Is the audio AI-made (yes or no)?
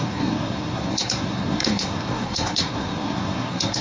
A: yes